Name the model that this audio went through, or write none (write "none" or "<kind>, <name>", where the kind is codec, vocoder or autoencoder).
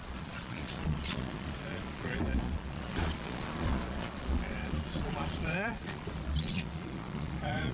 vocoder, Vocos